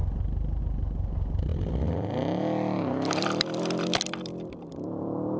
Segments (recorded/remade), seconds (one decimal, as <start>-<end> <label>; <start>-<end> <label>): 0.0-0.6 recorded; 0.6-5.4 remade